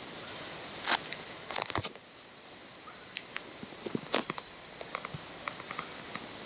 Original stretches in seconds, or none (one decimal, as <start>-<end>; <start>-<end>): 0.0-2.7; 3.3-4.2; 4.8-6.5